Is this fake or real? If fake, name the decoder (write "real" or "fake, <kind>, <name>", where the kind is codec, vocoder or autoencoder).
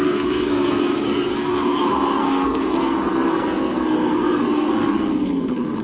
fake, codec, SNAC